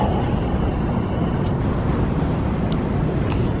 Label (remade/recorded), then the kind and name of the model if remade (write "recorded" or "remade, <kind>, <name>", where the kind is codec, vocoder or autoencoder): recorded